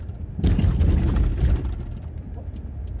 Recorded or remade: recorded